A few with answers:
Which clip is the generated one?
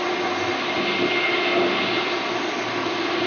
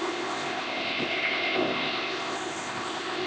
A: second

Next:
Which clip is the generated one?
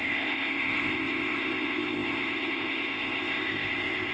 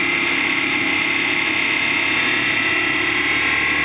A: first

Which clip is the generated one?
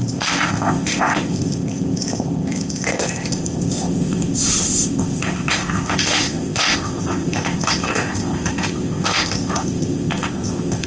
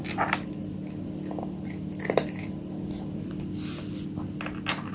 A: first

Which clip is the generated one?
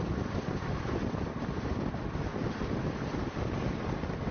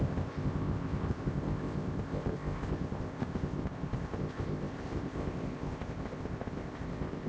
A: second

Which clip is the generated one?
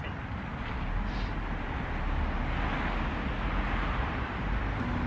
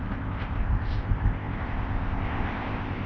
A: second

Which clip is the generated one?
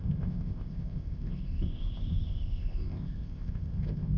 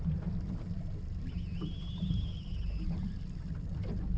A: first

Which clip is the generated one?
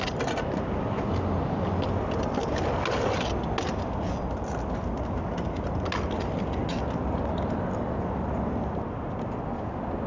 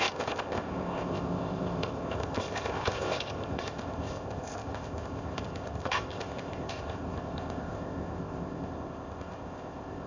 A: second